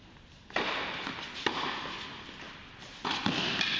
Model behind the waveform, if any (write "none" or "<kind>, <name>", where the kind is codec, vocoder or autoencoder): none